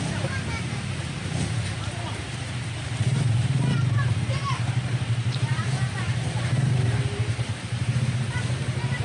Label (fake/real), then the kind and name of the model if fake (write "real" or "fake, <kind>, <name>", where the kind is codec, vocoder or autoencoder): fake, vocoder, BigVGAN v2